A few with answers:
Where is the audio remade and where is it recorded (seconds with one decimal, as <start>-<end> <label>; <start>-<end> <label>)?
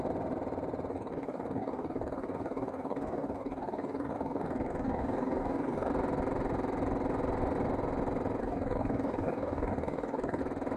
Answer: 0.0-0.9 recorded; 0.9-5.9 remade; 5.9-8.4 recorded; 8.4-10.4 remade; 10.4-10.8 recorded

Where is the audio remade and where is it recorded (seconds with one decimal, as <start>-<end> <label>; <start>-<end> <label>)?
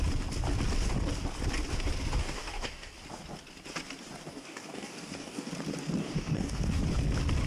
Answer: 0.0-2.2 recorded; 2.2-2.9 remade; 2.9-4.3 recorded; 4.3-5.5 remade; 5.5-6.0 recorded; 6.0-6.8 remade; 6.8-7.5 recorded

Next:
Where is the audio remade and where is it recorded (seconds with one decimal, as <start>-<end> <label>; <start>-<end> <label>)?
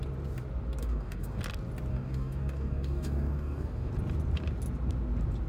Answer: 0.0-0.8 recorded; 0.8-1.4 remade; 1.4-1.9 recorded; 1.9-3.9 remade; 3.9-5.5 recorded